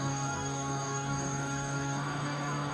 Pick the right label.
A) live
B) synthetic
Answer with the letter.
B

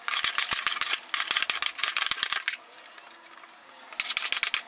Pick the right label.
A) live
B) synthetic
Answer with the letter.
A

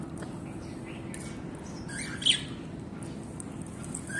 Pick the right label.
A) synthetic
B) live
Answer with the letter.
B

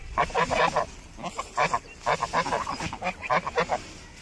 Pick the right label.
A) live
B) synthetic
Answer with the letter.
A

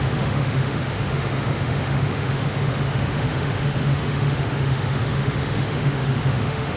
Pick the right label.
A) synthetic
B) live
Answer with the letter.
A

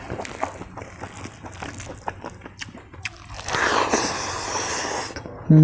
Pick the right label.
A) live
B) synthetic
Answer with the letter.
A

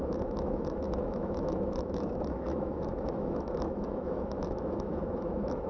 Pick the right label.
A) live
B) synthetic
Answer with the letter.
B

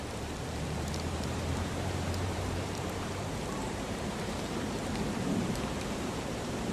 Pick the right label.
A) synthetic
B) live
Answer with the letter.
A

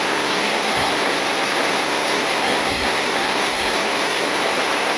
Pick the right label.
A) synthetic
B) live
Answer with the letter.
A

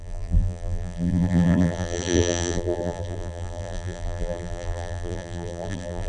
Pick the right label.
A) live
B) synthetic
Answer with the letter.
B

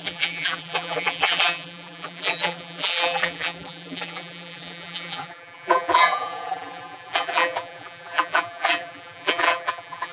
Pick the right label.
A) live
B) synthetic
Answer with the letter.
B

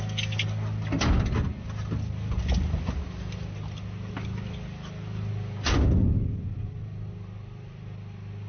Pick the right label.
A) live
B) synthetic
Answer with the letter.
A